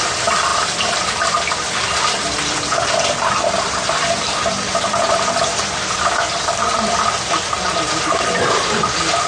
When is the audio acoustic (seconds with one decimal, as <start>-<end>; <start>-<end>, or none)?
none